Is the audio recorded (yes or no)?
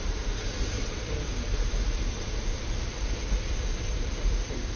no